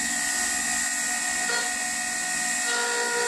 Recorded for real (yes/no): yes